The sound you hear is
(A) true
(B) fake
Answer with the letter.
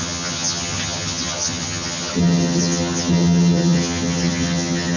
B